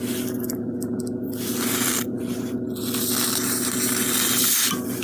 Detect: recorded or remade recorded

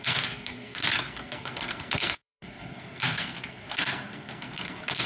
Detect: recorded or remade remade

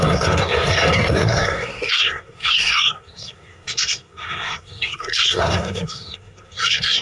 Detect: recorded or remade remade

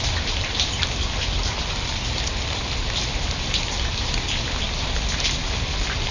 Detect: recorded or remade recorded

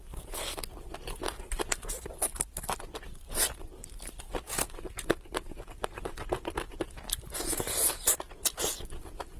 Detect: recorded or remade recorded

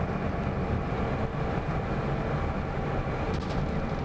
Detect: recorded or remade recorded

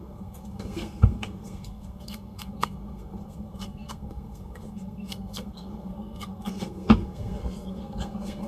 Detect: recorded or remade remade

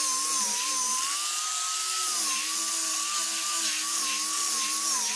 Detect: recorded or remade recorded